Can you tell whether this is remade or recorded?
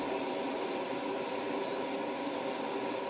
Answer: recorded